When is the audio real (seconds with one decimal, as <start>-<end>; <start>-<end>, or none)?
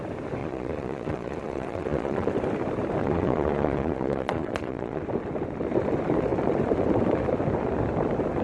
0.0-0.4; 2.3-3.0; 5.0-8.4